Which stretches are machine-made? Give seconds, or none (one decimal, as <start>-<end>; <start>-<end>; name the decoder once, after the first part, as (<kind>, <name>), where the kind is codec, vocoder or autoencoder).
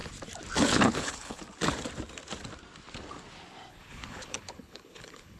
0.6-1.4 (codec, HILCodec); 3.7-5.4